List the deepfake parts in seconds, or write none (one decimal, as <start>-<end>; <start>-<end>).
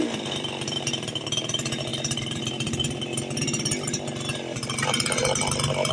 0.0-5.2